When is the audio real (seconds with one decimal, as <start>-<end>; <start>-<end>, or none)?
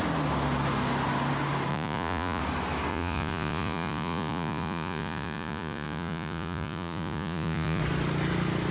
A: 0.0-1.7; 2.4-2.9; 7.8-8.7